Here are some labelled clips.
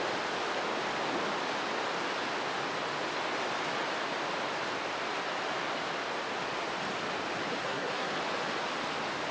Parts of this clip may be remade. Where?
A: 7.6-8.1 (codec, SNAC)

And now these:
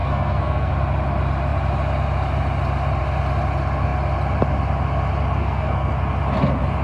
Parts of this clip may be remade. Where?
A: 0.0-0.7 (codec, SNAC); 5.4-6.0